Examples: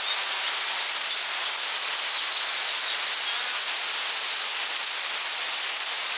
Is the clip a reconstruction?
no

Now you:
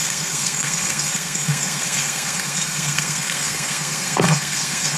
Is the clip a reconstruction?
yes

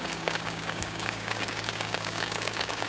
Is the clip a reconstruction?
yes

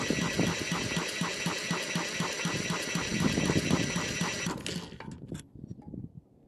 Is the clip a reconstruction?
no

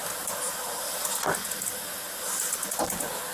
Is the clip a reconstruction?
no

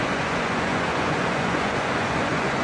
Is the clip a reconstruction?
yes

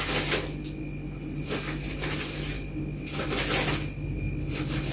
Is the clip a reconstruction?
no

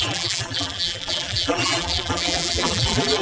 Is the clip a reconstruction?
yes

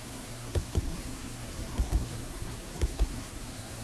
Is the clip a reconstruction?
yes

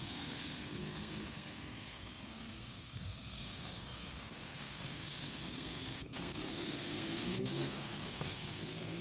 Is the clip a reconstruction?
yes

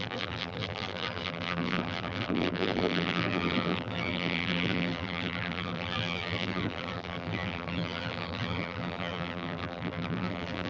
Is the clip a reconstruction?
yes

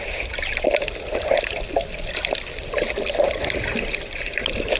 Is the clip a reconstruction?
no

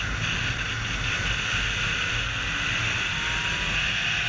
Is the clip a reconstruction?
no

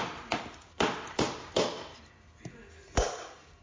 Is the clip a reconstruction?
no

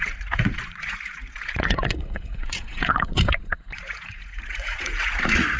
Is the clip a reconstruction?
yes